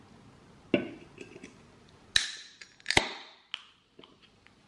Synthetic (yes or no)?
no